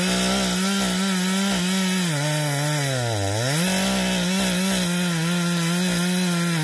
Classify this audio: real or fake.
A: real